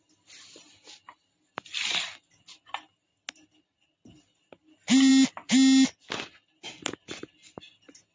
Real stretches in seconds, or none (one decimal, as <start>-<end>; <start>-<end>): 0.0-8.1

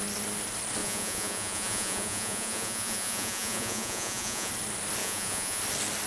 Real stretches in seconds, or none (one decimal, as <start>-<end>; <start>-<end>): 0.0-0.8; 4.5-5.0; 5.6-6.1

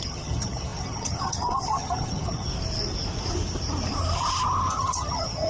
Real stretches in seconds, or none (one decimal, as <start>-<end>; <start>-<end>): 2.5-4.7

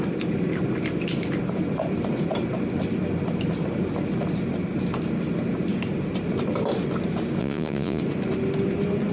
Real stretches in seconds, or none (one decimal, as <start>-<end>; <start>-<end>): 0.0-7.4; 8.0-9.1

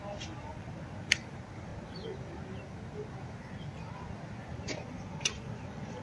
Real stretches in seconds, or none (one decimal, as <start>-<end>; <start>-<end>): 0.0-4.4

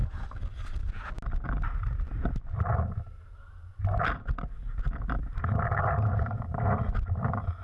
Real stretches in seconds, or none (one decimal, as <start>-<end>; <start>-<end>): 0.0-7.6